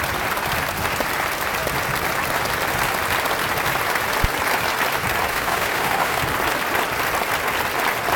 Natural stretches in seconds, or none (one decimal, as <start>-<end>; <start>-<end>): 0.0-5.3; 6.2-8.2